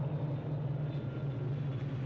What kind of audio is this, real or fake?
real